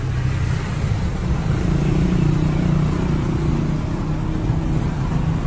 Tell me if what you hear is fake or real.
real